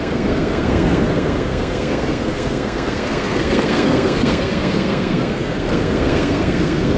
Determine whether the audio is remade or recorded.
remade